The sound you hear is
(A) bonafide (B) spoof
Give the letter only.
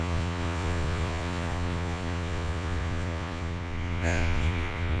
B